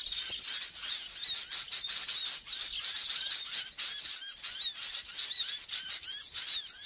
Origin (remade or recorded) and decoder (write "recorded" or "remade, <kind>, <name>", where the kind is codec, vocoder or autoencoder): recorded